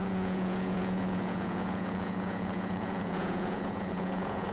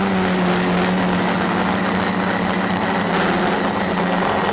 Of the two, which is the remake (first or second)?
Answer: first